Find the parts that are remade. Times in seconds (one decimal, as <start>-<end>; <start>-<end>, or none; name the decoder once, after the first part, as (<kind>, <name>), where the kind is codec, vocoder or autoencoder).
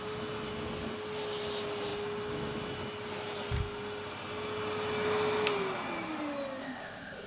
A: 6.6-7.3 (codec, ZipCodec)